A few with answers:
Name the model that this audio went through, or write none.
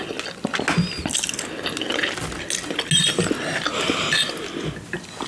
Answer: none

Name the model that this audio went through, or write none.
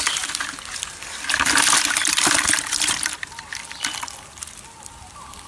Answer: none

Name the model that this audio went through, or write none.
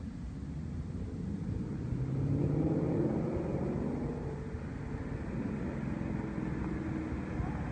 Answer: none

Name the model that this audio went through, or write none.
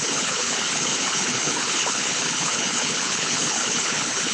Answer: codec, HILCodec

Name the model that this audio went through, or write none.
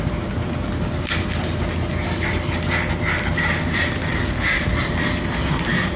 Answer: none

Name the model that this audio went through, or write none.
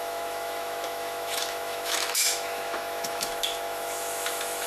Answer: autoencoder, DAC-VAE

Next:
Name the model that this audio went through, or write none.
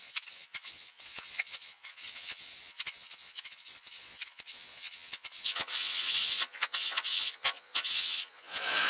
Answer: vocoder, Vocos